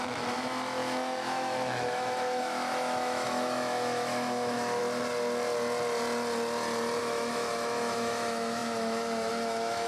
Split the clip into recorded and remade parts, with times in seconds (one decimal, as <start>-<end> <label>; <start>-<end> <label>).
0.0-4.8 remade; 4.8-7.0 recorded; 7.0-9.9 remade